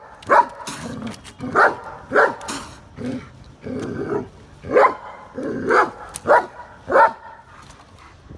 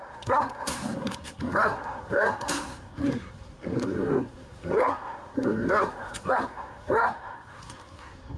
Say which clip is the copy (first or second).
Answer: second